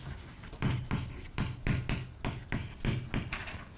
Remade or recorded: recorded